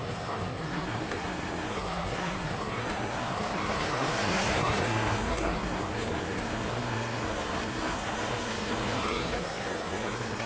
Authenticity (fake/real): fake